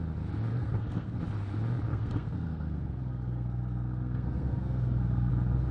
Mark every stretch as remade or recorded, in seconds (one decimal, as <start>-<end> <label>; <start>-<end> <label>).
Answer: 0.0-0.5 recorded; 0.5-1.2 remade; 1.2-1.9 recorded; 1.9-5.3 remade; 5.3-5.7 recorded